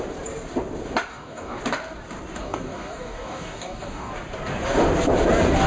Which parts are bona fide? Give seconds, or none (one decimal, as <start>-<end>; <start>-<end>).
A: 0.0-1.1; 1.6-2.4; 4.1-5.7